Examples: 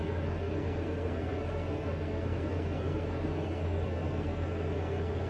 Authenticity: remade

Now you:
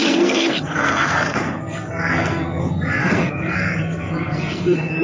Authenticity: remade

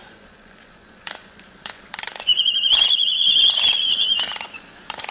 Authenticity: remade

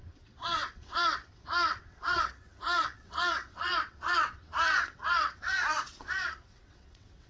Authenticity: remade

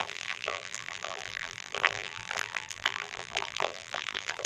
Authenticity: remade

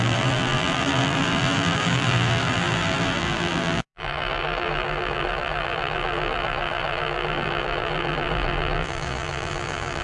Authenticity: remade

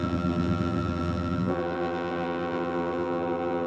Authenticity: remade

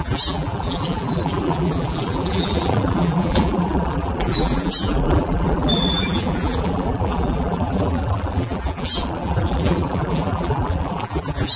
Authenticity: remade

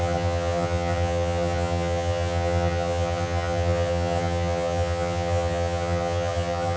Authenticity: remade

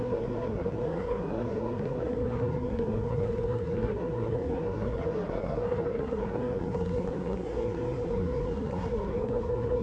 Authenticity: remade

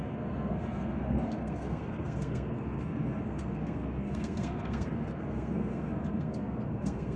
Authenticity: remade